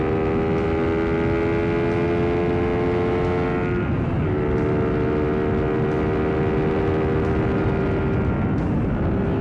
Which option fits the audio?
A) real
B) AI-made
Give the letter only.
A